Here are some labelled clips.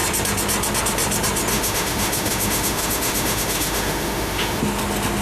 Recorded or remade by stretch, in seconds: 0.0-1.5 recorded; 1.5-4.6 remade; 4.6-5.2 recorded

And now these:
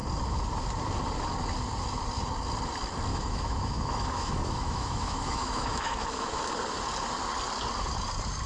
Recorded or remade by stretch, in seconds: 0.0-3.1 recorded; 3.1-6.4 remade; 6.4-8.5 recorded

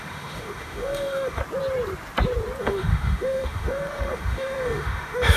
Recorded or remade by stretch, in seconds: 0.0-1.4 remade; 1.4-2.6 recorded; 2.6-5.4 remade

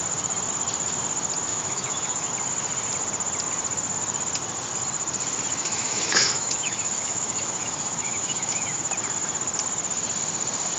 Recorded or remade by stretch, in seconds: 0.0-1.5 recorded; 1.5-2.3 remade; 2.3-5.6 recorded; 5.6-8.8 remade; 8.8-10.8 recorded

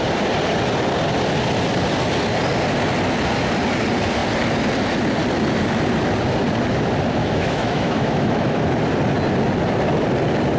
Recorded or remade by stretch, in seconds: 0.0-7.2 recorded; 7.2-8.6 remade; 8.6-10.6 recorded